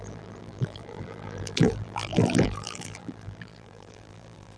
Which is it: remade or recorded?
remade